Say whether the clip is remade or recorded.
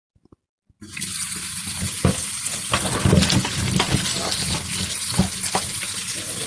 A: recorded